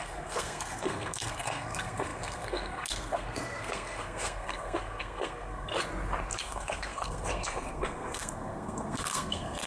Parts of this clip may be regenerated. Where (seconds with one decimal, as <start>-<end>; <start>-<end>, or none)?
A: 0.0-5.7; 6.4-9.7